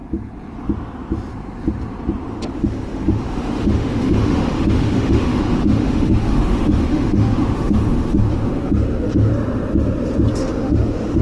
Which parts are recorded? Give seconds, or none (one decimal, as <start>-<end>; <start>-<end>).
0.0-2.2; 9.3-10.3